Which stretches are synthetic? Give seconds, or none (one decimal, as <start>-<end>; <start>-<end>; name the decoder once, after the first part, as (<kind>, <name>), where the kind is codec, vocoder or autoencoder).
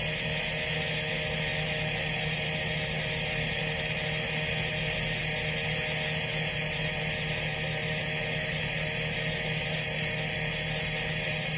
none